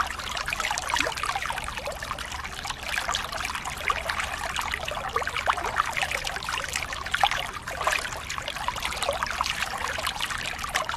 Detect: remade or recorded recorded